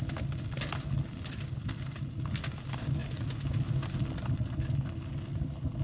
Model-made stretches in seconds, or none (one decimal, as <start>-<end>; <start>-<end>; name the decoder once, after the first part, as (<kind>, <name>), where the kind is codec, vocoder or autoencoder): none